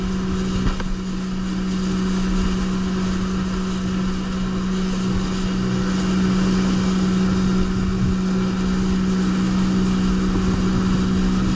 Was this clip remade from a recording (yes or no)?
no